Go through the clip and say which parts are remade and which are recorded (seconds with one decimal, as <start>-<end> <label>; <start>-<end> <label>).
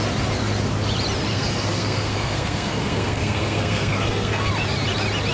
0.0-1.3 recorded; 1.3-4.5 remade; 4.5-5.3 recorded